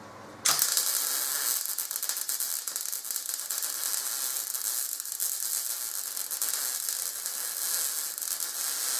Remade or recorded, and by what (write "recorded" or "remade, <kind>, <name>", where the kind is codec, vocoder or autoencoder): recorded